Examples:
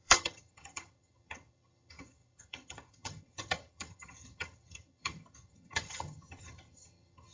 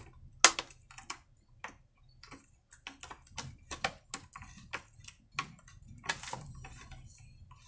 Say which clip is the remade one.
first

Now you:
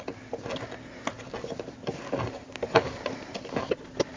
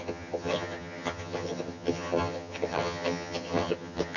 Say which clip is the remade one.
second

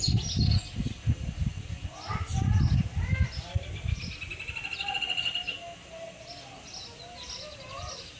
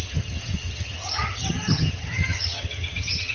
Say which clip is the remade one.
second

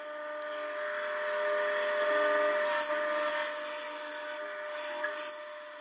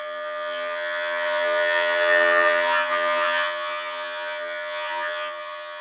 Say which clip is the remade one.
second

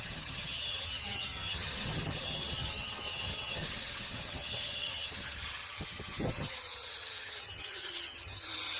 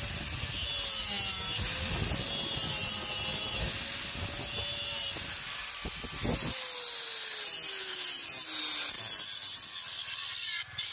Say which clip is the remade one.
first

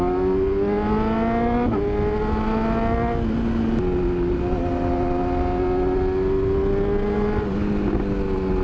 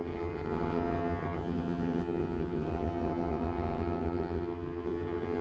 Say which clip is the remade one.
second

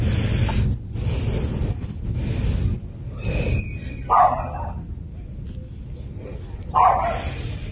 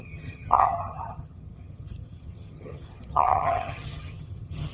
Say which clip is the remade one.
second